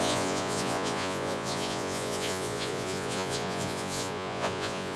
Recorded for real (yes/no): no